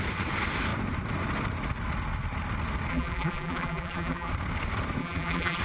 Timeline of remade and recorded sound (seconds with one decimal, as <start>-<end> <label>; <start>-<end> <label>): 0.0-2.9 recorded; 2.9-4.3 remade; 4.3-5.0 recorded; 5.0-5.6 remade